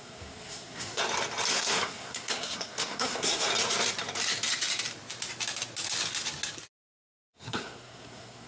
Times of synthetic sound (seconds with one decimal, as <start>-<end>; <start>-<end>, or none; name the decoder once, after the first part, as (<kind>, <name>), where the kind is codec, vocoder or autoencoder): 0.0-1.0 (codec, SNAC); 1.5-3.5; 6.8-8.5

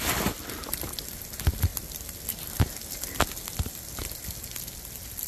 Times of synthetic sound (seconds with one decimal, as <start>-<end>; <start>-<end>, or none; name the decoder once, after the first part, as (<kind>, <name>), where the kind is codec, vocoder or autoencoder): none

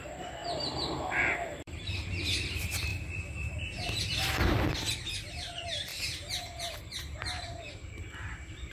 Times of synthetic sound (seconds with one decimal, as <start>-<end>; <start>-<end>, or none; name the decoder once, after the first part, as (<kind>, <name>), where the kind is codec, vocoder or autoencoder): 0.0-2.9 (vocoder, BigVGAN v2); 4.9-8.7

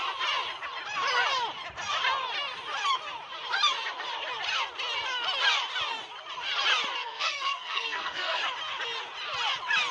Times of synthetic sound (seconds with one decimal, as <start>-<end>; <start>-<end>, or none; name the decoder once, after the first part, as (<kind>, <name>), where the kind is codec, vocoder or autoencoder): 7.0-8.4 (codec, SNAC)

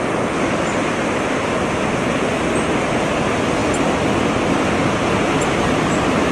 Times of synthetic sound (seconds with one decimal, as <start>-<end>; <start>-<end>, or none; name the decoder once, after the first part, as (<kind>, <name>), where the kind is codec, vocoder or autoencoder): none

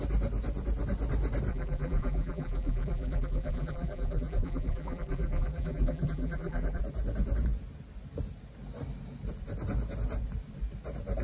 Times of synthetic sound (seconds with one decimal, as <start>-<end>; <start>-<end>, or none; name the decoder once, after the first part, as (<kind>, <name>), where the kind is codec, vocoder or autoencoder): 1.5-6.8 (vocoder, BigVGAN v2)